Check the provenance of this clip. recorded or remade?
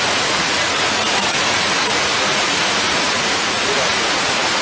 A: remade